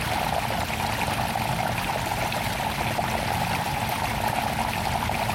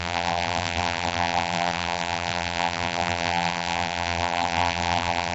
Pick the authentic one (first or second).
first